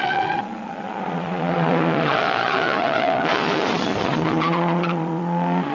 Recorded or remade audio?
remade